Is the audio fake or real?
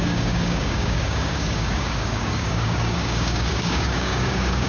fake